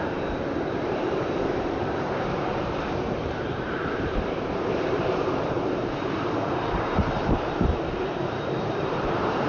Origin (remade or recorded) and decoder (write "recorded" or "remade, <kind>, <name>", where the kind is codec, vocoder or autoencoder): remade, vocoder, BigVGAN v2